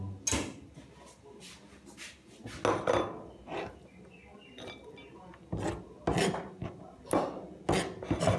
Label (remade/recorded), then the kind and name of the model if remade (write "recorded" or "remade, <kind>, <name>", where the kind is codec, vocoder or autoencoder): recorded